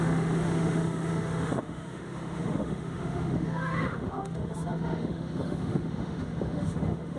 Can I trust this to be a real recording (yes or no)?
no